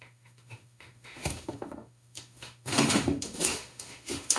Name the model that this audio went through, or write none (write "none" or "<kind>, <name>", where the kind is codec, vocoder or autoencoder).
autoencoder, DAC-VAE